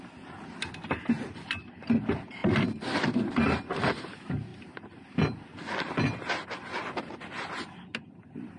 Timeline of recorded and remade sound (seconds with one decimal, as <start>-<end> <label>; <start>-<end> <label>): 0.0-8.6 recorded